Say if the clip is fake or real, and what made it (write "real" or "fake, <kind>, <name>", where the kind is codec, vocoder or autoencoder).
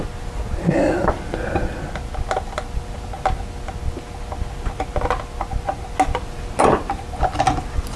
real